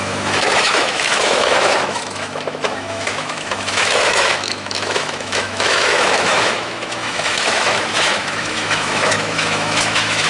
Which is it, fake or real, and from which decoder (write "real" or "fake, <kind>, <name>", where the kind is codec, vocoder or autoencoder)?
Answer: fake, autoencoder, DAC-VAE